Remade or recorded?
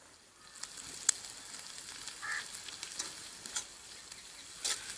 recorded